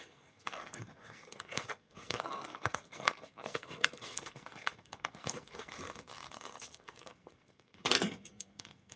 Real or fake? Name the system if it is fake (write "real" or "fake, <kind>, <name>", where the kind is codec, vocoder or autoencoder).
fake, codec, SNAC